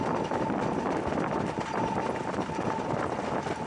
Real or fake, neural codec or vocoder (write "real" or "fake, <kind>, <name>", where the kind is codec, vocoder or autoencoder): real